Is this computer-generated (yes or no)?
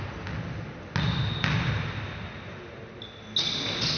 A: no